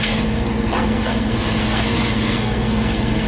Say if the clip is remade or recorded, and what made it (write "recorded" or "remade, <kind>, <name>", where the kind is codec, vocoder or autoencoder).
remade, codec, SNAC